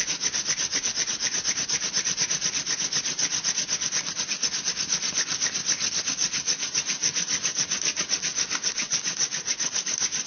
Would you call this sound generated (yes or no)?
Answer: no